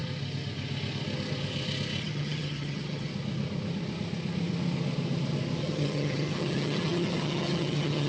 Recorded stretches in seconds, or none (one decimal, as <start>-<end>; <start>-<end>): 0.0-2.0; 3.1-5.6